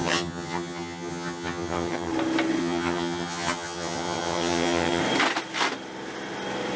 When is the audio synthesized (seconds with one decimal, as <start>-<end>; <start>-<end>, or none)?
0.0-2.1; 2.6-5.0